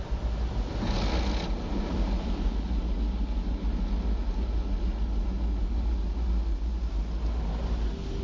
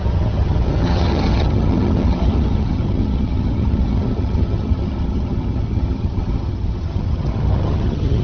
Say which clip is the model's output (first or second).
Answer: second